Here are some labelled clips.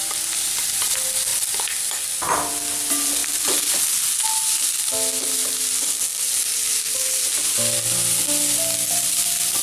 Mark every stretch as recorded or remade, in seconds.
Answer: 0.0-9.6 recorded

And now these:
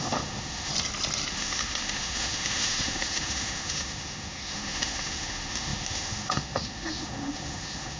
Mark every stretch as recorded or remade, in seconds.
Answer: 0.0-0.7 remade; 0.7-1.3 recorded; 1.3-8.0 remade

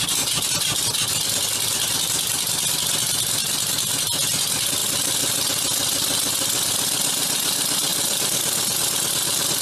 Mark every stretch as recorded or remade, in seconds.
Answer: 0.0-9.6 recorded

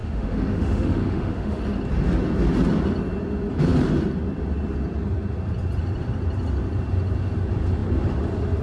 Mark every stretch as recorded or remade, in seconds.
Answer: 0.0-1.6 remade; 1.6-8.6 recorded

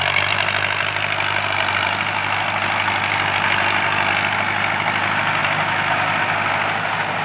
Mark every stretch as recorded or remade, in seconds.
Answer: 0.0-7.2 recorded